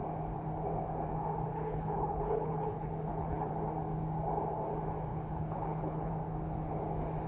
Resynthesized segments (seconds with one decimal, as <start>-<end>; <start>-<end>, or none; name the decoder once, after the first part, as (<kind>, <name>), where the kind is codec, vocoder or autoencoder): 1.5-3.5 (codec, HILCodec); 5.1-6.1